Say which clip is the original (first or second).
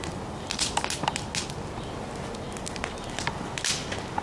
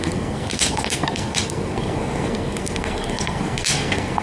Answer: first